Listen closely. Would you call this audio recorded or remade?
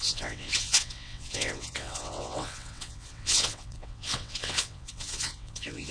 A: remade